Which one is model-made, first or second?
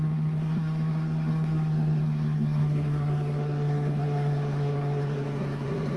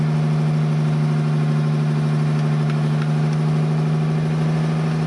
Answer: first